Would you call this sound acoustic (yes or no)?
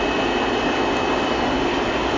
yes